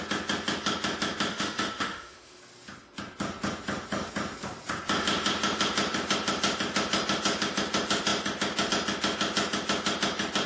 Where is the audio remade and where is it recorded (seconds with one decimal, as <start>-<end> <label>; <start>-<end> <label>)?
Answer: 0.0-1.3 recorded; 1.3-2.4 remade; 2.4-10.5 recorded